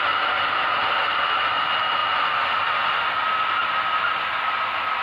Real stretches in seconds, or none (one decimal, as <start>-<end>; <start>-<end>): 0.0-5.0